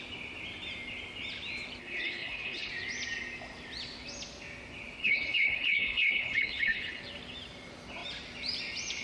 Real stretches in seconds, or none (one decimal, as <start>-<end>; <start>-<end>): 0.0-1.8; 2.7-5.0; 7.0-9.0